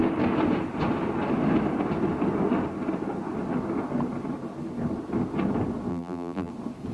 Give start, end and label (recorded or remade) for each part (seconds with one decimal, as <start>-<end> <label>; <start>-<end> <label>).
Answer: 0.0-5.9 recorded; 5.9-6.5 remade; 6.5-6.9 recorded